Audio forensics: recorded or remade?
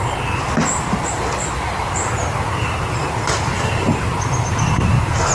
recorded